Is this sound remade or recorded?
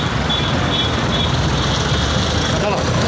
recorded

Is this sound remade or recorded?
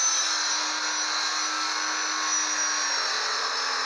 recorded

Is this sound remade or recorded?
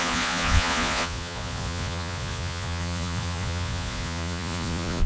remade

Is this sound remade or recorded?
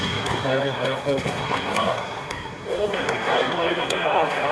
remade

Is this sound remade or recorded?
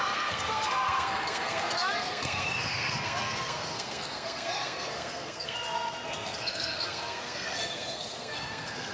remade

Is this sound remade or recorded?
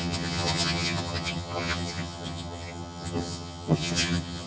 remade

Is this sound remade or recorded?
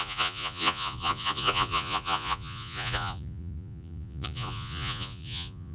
remade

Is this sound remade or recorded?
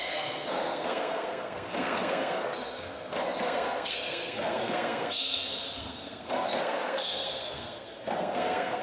remade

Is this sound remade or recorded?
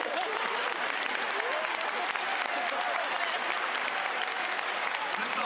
recorded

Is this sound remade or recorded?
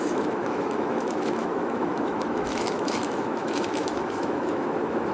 remade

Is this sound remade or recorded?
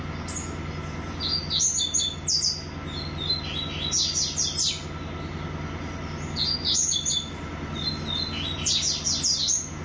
recorded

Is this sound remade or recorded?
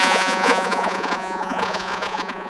remade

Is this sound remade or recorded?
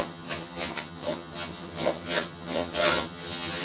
remade